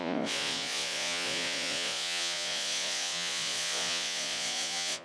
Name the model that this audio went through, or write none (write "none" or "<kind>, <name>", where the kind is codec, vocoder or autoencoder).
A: vocoder, Vocos